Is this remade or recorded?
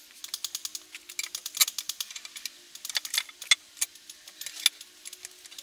recorded